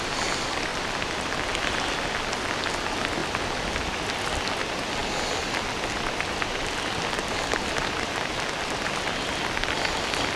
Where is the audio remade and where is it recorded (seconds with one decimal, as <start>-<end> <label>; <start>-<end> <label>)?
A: 0.0-10.4 recorded